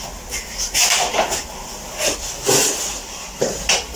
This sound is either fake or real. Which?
real